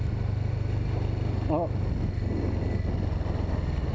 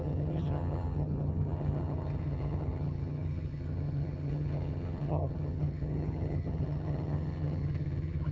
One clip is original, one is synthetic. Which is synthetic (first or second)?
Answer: second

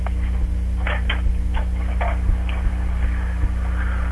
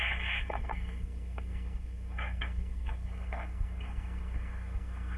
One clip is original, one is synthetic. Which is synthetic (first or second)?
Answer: second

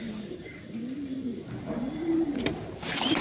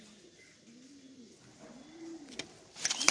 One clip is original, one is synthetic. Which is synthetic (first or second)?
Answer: first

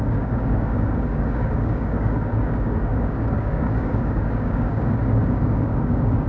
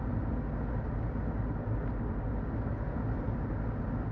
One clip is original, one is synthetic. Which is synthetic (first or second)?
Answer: first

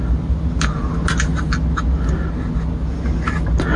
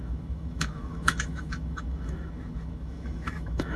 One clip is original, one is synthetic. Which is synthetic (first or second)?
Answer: second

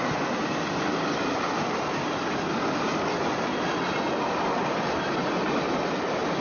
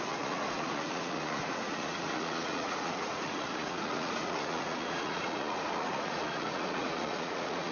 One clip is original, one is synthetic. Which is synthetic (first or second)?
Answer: second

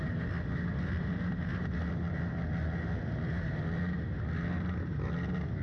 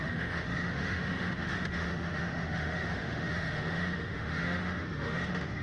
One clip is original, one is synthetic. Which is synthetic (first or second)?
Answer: second